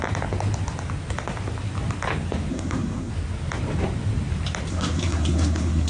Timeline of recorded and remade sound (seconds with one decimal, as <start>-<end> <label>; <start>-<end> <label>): 0.0-2.5 recorded; 2.5-3.1 remade; 3.1-4.7 recorded; 4.7-5.9 remade